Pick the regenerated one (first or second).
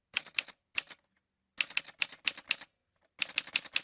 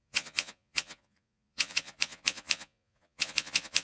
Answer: second